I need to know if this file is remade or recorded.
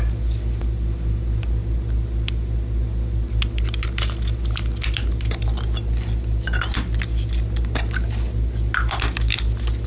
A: recorded